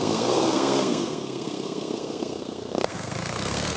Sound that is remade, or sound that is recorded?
remade